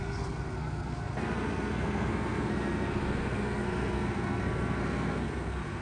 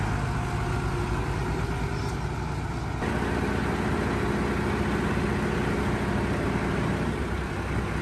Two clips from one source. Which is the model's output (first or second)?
first